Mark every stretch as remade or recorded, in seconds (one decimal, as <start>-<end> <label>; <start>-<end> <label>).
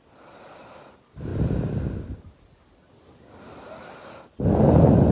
0.0-5.1 recorded